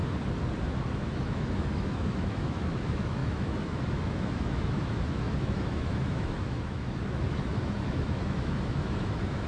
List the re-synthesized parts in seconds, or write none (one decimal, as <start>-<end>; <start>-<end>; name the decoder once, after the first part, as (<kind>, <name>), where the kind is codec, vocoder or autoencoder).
0.9-9.5 (autoencoder, DAC-VAE)